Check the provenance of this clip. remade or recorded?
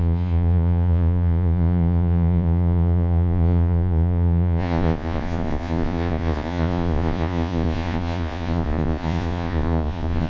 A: remade